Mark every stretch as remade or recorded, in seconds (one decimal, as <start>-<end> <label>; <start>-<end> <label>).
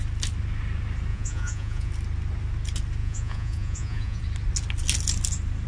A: 0.0-1.1 recorded; 1.1-1.9 remade; 1.9-3.0 recorded; 3.0-4.2 remade; 4.2-5.7 recorded